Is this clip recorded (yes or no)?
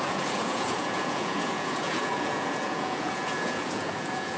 no